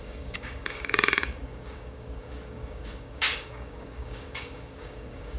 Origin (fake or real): fake